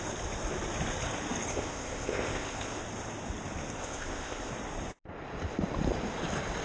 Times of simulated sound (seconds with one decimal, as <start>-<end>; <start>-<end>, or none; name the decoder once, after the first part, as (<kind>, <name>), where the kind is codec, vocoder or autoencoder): 1.5-2.8 (codec, ZipCodec); 3.8-4.5